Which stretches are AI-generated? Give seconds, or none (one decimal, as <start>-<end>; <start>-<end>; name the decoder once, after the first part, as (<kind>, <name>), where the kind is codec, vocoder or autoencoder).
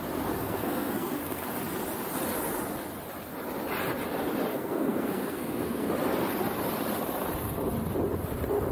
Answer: 0.4-1.5 (codec, SNAC); 4.5-5.9